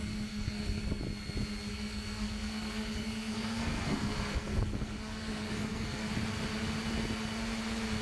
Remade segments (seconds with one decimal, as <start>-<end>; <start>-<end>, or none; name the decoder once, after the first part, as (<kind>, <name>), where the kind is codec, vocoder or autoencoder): 0.0-1.0 (codec, SNAC); 1.7-6.1